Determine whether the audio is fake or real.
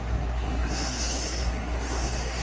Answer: fake